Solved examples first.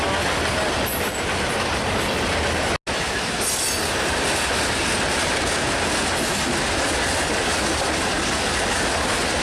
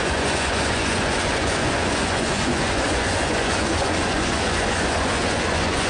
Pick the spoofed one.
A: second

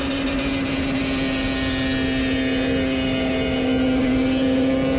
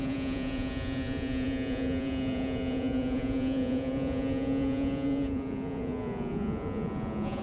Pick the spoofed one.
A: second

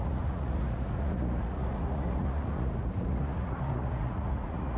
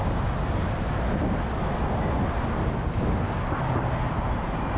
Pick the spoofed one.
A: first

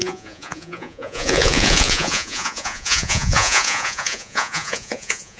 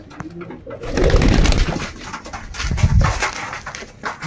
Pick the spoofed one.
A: first